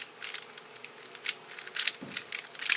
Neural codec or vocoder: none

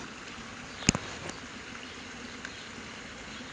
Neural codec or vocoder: none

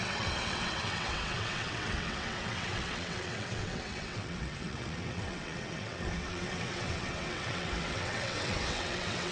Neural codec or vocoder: vocoder, WaveNeXt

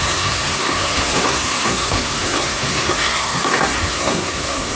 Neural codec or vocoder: codec, SNAC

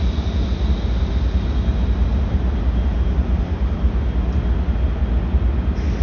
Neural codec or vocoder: none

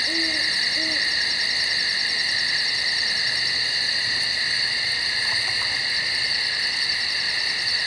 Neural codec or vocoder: none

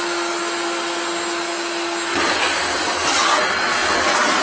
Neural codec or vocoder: none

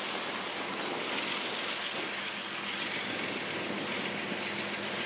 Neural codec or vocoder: none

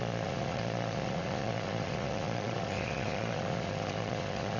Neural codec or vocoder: vocoder, Vocos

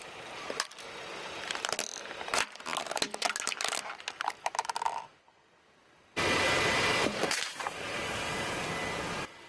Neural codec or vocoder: none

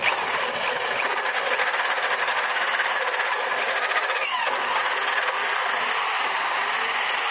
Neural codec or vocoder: none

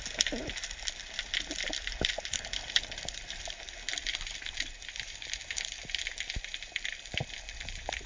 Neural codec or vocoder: none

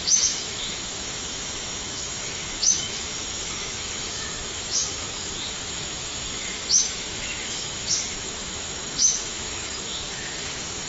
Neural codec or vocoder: autoencoder, DAC-VAE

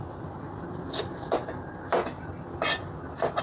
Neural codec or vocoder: none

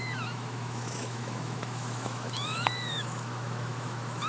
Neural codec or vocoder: autoencoder, DAC-VAE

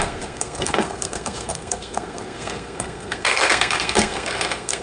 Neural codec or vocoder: codec, SNAC